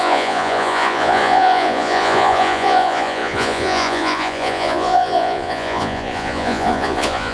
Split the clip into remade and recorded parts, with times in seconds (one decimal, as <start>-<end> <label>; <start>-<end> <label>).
0.0-7.3 remade